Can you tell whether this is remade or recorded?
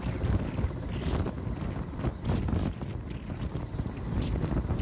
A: recorded